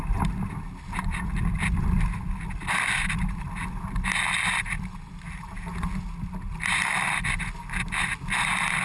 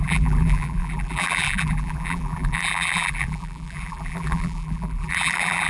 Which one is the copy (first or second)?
second